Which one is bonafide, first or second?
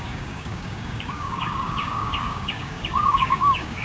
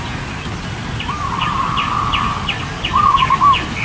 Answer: second